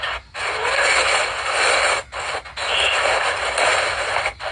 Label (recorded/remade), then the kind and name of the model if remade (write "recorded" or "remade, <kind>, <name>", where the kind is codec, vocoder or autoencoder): recorded